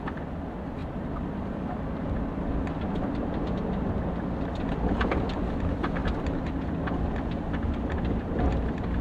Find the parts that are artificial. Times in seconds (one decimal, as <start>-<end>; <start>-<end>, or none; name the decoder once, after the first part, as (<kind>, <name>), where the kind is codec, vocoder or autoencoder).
0.0-6.0 (vocoder, BigVGAN v2); 7.3-9.0